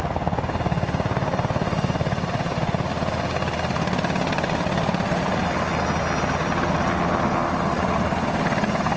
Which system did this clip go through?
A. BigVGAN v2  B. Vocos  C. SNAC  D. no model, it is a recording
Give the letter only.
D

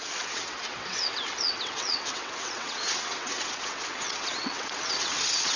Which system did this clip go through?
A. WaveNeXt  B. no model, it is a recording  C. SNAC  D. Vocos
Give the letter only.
A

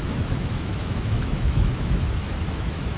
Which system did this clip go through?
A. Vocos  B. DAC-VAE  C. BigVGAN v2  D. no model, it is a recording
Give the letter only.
B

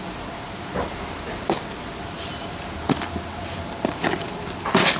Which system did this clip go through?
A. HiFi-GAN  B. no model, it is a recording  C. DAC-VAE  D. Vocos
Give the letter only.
B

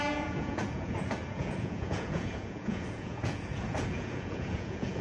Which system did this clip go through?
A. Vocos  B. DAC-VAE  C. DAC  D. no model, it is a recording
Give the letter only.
A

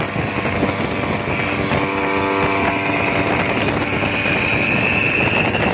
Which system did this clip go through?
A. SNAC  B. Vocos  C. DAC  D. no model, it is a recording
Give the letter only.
D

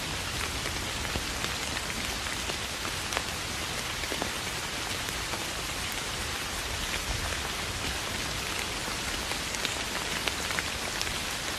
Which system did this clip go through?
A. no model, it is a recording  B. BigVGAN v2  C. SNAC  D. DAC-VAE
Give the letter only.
A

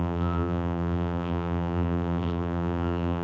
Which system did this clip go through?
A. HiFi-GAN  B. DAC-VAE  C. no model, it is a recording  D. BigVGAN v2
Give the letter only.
D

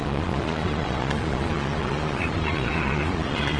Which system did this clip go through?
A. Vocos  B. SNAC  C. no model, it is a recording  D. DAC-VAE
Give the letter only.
A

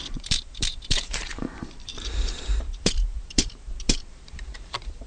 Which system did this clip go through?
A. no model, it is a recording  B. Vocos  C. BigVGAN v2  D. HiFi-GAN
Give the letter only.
C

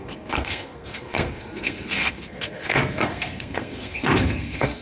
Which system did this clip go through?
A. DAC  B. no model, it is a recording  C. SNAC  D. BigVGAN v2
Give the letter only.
C